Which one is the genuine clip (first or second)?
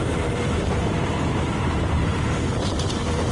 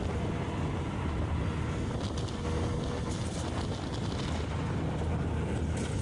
second